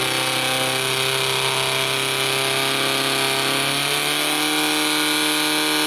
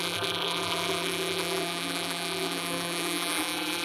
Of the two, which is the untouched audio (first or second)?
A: first